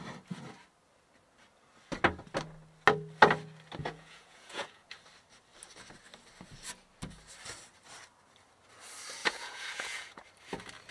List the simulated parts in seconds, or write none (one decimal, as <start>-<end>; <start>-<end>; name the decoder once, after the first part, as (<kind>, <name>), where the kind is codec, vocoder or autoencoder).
3.8-4.9 (vocoder, Vocos); 9.2-10.2